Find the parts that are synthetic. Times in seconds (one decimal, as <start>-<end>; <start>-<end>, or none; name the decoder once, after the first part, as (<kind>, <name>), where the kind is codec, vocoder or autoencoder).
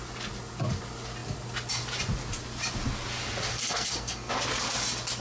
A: 3.5-4.3 (codec, SNAC)